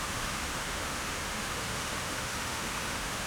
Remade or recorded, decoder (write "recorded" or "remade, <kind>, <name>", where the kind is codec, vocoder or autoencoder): remade, autoencoder, DAC-VAE